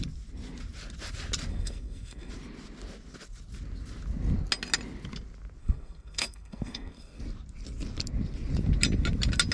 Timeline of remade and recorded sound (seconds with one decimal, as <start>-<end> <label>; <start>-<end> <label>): 0.0-1.5 recorded; 1.5-2.3 remade; 2.3-5.6 recorded; 5.6-7.2 remade; 7.2-9.5 recorded